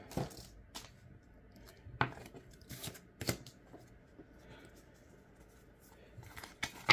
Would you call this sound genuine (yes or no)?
yes